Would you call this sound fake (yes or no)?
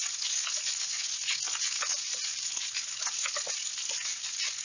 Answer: no